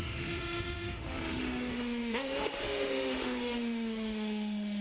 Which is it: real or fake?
fake